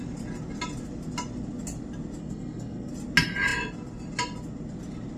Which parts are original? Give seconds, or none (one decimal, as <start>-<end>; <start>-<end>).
0.0-2.2; 2.9-5.2